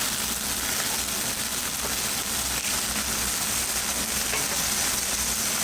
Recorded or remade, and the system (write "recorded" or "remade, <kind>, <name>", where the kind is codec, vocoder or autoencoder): recorded